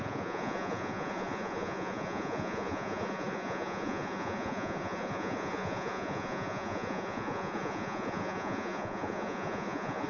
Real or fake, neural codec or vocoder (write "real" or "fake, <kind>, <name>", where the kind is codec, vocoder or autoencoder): fake, vocoder, Vocos